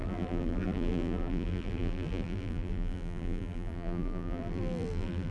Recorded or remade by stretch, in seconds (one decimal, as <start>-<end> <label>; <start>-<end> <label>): 0.0-5.3 remade